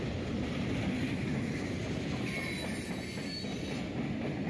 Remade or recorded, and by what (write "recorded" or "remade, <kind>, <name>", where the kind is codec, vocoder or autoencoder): recorded